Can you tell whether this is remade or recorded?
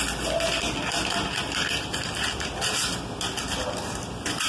recorded